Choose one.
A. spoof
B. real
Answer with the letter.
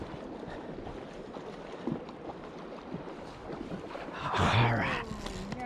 B